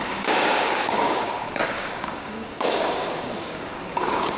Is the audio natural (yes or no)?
no